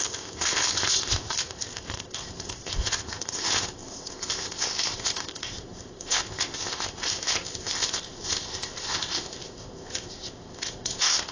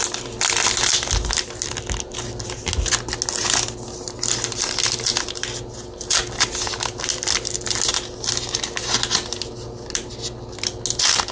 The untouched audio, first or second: second